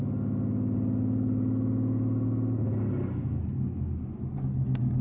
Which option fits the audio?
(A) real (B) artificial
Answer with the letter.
A